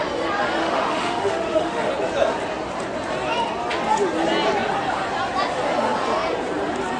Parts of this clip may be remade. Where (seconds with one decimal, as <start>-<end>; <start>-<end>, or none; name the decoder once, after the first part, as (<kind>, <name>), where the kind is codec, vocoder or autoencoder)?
0.6-1.9 (autoencoder, DAC-VAE)